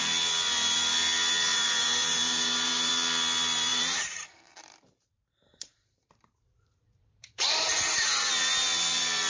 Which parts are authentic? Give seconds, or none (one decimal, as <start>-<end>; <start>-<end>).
0.0-1.5; 2.9-3.7; 8.3-9.3